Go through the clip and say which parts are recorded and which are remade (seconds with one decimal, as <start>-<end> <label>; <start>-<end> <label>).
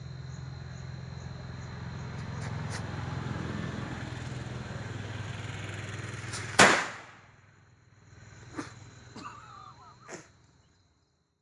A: 0.0-6.4 recorded; 6.4-7.6 remade; 7.6-10.1 recorded; 10.1-10.8 remade; 10.8-11.4 recorded